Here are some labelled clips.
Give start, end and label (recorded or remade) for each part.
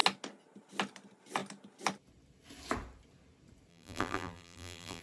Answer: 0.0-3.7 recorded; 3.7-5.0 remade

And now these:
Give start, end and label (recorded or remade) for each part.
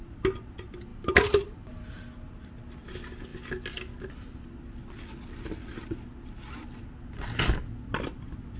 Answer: 0.0-0.9 recorded; 0.9-2.0 remade; 2.0-8.6 recorded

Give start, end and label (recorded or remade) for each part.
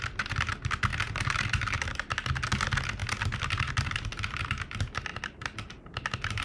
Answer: 0.0-6.4 recorded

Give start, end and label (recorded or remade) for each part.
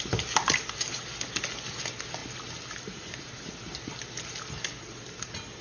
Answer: 0.0-5.6 recorded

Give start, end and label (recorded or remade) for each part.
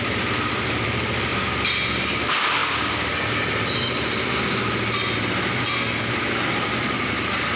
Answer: 0.0-7.6 recorded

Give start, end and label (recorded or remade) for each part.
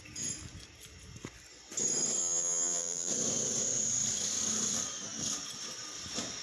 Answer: 0.0-2.2 recorded; 2.2-3.1 remade; 3.1-6.4 recorded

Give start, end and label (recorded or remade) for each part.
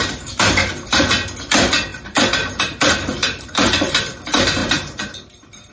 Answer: 0.0-1.9 recorded; 1.9-2.8 remade; 2.8-3.2 recorded; 3.2-3.8 remade; 3.8-4.6 recorded; 4.6-5.7 remade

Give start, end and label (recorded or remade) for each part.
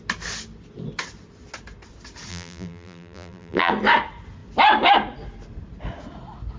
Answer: 0.0-2.3 recorded; 2.3-3.7 remade; 3.7-6.6 recorded